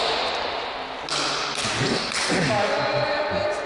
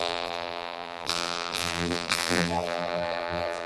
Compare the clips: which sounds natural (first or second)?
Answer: first